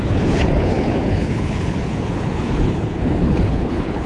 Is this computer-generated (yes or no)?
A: yes